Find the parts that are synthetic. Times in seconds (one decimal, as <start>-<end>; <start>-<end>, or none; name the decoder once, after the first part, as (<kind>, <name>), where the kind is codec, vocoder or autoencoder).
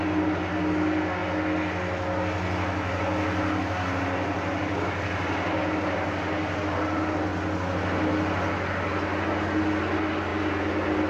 none